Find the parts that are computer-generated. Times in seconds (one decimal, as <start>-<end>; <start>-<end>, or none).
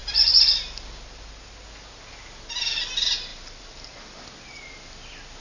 0.0-1.3; 3.3-4.2